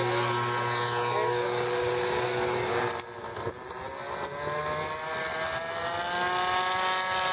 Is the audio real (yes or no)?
yes